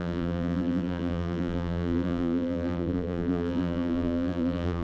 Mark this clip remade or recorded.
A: remade